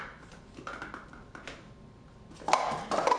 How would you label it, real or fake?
real